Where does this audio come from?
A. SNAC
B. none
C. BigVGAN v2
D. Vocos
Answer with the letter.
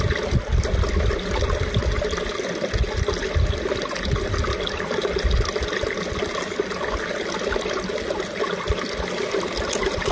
B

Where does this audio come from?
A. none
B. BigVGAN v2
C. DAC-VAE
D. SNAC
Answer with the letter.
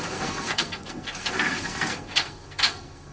D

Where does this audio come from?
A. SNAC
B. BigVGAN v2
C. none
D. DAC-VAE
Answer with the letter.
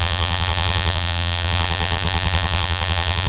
B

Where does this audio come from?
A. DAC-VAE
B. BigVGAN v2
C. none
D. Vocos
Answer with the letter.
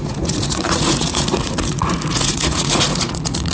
D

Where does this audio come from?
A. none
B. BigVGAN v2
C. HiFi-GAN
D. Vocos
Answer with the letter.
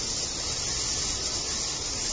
A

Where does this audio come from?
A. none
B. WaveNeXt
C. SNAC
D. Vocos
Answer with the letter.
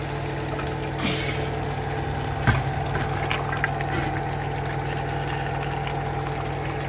A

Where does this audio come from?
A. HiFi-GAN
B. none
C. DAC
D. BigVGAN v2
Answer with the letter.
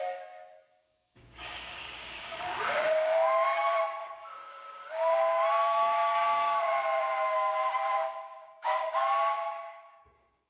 C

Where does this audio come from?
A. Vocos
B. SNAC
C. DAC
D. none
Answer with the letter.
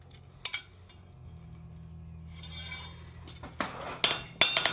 D